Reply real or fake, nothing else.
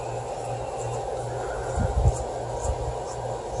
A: real